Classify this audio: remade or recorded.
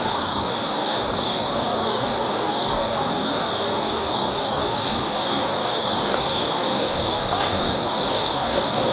remade